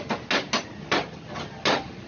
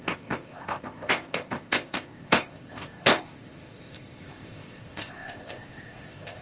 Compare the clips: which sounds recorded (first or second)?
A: first